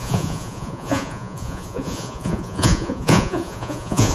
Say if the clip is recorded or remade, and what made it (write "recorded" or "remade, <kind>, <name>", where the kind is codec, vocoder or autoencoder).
remade, vocoder, Vocos